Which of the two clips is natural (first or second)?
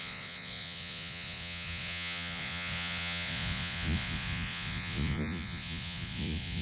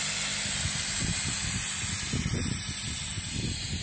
second